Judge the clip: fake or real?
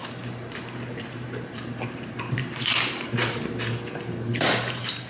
fake